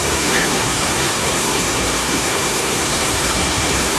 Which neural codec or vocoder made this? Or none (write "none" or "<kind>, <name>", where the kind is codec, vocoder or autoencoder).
codec, SNAC